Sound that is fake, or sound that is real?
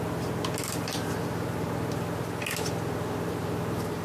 real